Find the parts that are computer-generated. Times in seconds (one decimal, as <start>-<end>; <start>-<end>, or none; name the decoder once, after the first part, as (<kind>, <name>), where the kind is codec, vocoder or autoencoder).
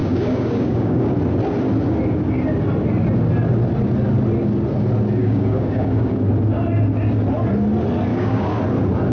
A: 0.0-1.1 (codec, DAC); 5.2-6.3; 8.1-8.6